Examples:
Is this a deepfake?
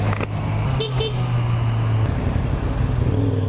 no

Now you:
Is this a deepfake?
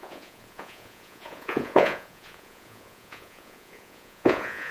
yes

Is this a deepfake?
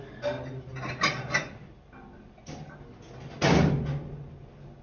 no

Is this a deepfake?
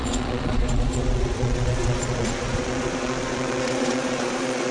yes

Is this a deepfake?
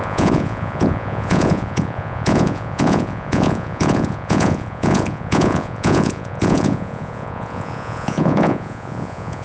yes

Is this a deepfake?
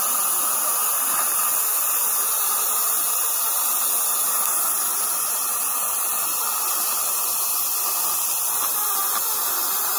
no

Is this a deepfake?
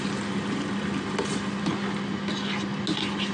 no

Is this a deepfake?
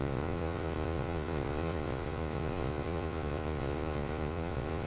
yes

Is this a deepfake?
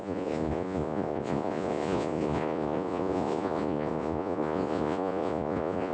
yes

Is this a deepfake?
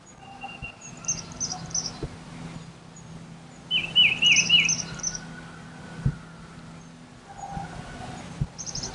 no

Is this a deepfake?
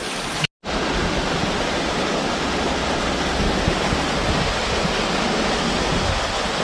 no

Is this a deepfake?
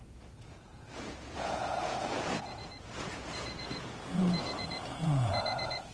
yes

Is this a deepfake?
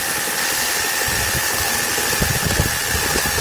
no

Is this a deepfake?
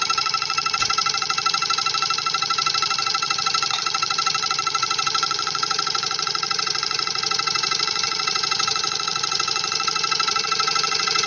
yes